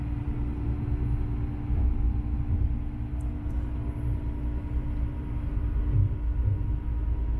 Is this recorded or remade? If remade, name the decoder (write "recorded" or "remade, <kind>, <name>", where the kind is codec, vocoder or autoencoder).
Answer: recorded